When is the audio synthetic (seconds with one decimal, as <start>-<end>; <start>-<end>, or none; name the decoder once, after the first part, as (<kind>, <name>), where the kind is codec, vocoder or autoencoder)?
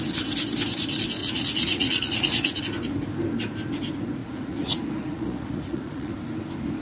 1.2-2.6 (vocoder, Vocos); 4.2-6.1